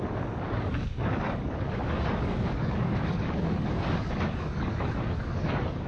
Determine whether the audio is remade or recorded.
remade